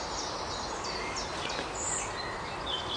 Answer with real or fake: real